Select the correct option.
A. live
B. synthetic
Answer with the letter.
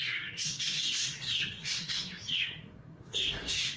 B